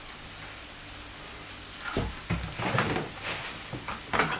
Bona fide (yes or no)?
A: yes